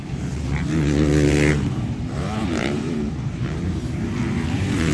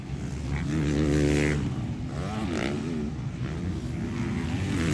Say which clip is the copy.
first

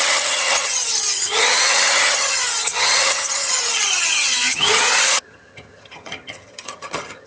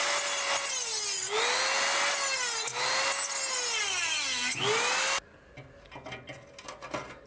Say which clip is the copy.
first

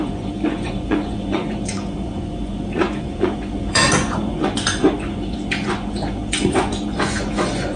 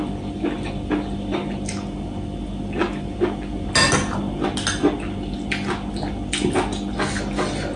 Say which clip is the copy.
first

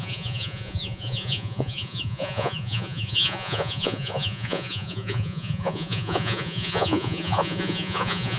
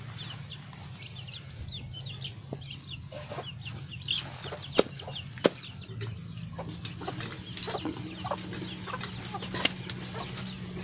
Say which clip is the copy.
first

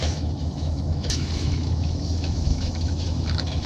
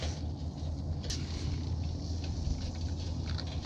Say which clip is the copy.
first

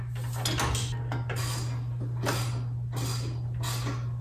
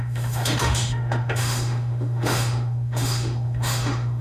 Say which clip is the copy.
second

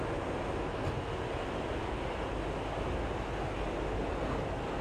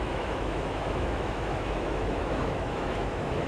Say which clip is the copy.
second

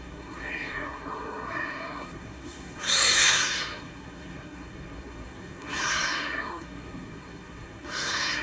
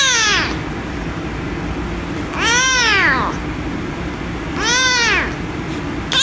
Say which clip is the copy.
first